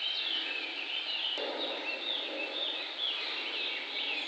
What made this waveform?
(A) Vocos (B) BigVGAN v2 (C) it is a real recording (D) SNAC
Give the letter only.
C